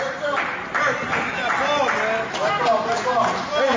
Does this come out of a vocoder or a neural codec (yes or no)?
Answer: no